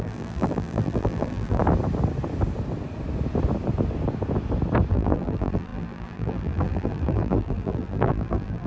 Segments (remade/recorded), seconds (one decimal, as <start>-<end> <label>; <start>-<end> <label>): 0.0-1.6 remade; 1.6-4.9 recorded; 4.9-8.7 remade